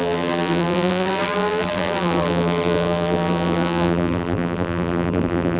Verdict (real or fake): fake